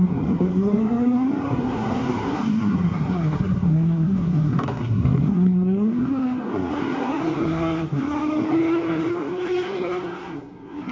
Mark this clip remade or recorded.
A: remade